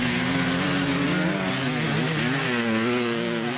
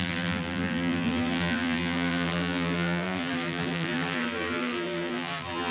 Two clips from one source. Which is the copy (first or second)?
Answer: second